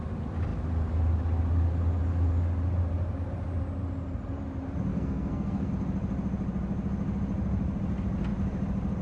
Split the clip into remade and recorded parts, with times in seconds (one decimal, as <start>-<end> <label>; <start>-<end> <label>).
0.0-4.9 recorded; 4.9-5.7 remade; 5.7-9.0 recorded